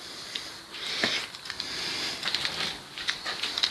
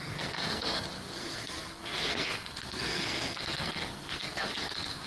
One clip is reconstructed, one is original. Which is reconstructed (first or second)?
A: second